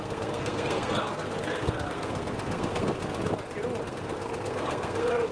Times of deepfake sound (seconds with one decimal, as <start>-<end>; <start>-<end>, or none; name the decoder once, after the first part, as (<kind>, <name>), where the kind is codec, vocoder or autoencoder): 0.0-3.0 (codec, SNAC); 3.9-5.3